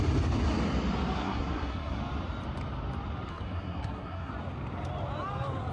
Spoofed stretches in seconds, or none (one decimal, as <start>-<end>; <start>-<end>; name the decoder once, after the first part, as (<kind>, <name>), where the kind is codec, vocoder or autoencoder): 1.2-2.0 (codec, SNAC); 3.3-4.3